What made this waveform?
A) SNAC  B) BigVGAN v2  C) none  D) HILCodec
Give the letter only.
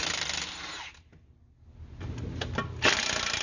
C